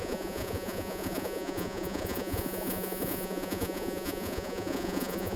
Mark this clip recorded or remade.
remade